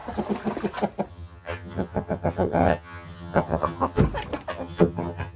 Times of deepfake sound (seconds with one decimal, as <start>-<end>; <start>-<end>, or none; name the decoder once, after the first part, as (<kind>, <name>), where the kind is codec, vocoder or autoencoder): 1.1-4.0 (vocoder, HiFi-GAN); 4.5-5.4